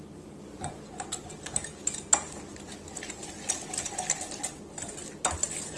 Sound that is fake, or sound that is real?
real